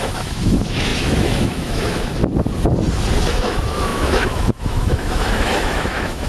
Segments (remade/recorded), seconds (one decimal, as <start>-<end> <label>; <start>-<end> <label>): 0.0-2.2 remade; 2.2-3.3 recorded; 3.3-6.3 remade